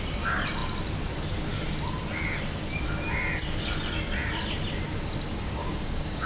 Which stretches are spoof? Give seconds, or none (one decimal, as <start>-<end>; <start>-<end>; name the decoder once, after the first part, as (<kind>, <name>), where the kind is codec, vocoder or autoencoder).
5.3-6.3 (codec, DAC)